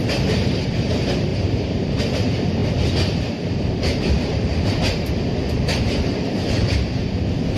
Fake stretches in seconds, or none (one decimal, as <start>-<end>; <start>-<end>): 1.3-2.0; 6.6-7.6